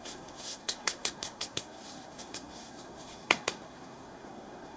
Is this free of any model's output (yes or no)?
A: no